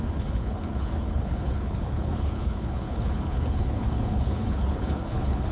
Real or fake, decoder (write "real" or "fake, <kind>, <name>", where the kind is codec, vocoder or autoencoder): fake, codec, HILCodec